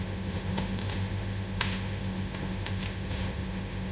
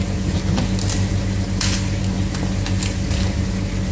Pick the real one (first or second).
second